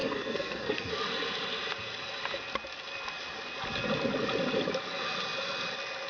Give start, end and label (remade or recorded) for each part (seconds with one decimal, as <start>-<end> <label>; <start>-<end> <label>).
0.0-0.9 remade; 0.9-6.1 recorded